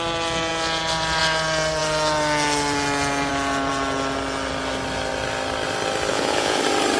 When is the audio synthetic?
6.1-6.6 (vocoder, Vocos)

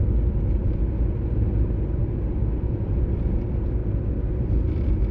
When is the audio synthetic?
none

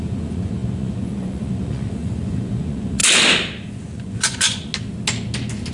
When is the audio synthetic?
0.0-3.0 (vocoder, Vocos); 3.7-4.7